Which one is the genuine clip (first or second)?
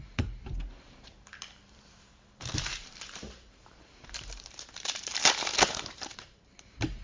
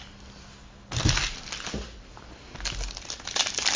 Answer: second